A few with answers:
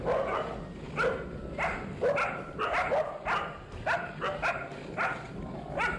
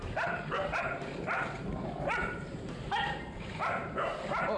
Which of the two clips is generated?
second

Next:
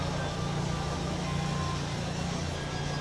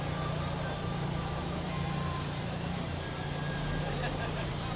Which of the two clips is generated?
second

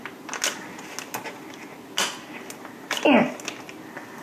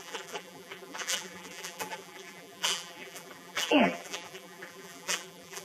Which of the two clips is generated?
second